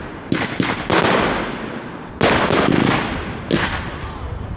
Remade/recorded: recorded